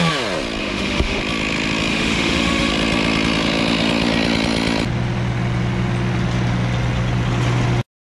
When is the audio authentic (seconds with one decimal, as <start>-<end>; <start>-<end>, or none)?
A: 0.0-0.6; 1.2-1.9; 2.7-8.1